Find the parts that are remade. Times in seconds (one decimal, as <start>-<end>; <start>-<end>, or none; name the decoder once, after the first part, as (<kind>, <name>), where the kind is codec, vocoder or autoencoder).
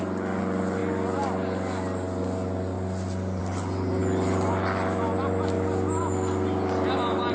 none